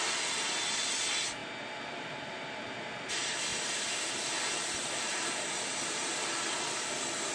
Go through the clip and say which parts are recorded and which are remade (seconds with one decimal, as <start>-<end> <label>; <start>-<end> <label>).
0.0-3.5 recorded; 3.5-6.0 remade; 6.0-7.3 recorded